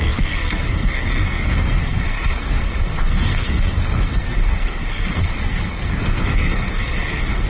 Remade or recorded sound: remade